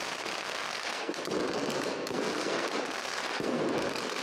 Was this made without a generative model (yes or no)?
no